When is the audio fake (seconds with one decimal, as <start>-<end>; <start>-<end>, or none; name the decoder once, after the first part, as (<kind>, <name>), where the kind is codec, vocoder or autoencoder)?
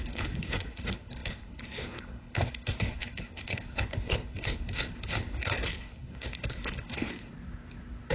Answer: 0.0-7.3 (codec, HILCodec)